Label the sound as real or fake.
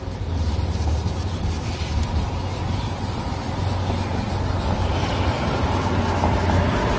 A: real